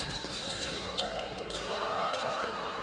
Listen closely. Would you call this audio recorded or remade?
remade